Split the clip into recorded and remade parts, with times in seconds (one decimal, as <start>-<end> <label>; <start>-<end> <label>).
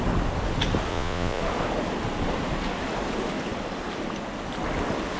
0.0-0.9 recorded; 0.9-1.4 remade; 1.4-5.2 recorded